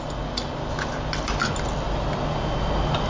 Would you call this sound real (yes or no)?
yes